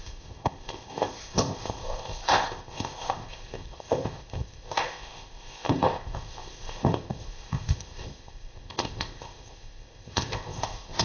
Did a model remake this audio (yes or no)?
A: yes